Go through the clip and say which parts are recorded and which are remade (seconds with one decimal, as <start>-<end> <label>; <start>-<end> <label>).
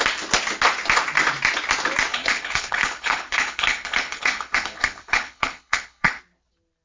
0.0-2.1 recorded; 2.1-6.2 remade; 6.2-6.8 recorded